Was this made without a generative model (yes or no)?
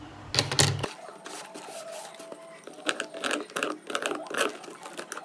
yes